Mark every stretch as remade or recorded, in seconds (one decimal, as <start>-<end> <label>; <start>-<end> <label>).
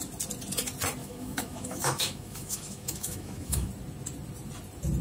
0.0-1.0 recorded; 1.0-3.7 remade; 3.7-5.0 recorded